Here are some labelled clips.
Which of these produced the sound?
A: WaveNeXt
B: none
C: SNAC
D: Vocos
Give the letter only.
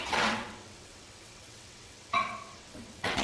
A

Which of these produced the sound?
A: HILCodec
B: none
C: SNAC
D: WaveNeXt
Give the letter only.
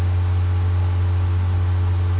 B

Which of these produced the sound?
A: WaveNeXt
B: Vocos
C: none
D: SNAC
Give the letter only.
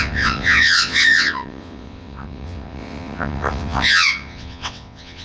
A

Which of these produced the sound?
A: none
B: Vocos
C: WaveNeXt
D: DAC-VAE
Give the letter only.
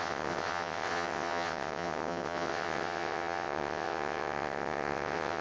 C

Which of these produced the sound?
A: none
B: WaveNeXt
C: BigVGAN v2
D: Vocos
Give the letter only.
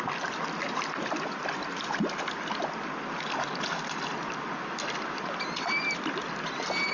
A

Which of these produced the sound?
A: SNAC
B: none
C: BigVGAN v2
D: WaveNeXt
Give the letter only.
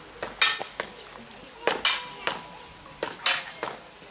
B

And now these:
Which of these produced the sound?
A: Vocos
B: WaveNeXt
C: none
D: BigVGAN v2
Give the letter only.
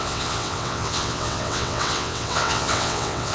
B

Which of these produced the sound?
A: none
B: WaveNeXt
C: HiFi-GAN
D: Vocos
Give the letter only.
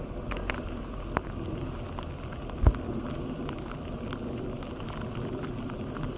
A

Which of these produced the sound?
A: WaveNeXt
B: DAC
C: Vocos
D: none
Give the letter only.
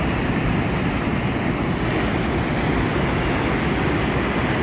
D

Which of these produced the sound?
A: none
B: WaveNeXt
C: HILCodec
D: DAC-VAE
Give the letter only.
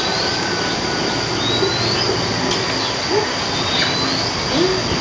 A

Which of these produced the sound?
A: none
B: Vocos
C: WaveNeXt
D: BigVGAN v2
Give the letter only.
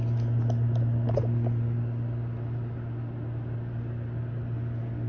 A